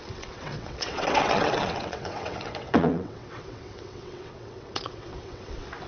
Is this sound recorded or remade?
remade